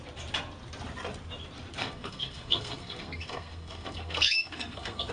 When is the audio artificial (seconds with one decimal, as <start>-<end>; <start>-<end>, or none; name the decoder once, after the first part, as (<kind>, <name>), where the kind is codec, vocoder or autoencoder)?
1.8-5.1 (codec, SNAC)